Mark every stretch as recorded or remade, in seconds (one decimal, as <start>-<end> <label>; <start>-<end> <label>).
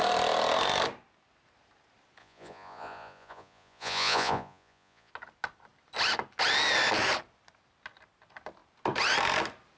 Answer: 0.0-2.2 recorded; 2.2-5.1 remade; 5.1-9.8 recorded